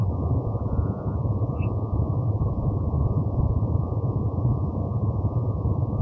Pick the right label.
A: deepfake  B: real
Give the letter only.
A